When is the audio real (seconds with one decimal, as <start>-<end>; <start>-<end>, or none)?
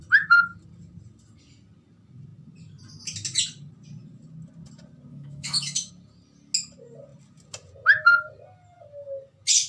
0.0-5.1; 5.9-9.7